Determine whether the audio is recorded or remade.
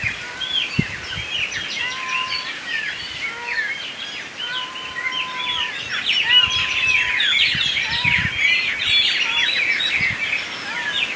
recorded